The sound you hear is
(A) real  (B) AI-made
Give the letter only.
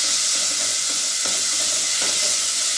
B